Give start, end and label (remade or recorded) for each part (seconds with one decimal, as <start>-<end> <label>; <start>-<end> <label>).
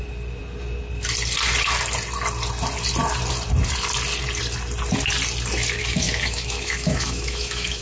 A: 0.0-5.8 recorded; 5.8-7.8 remade